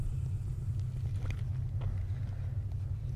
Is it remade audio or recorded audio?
recorded